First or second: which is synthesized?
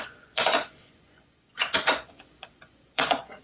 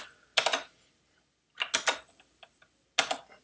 first